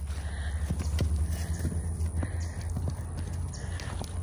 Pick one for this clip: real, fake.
real